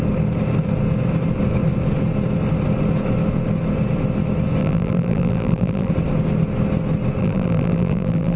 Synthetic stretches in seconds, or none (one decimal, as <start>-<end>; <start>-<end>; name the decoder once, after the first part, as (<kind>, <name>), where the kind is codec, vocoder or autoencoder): 4.6-5.9 (vocoder, BigVGAN v2); 7.2-8.4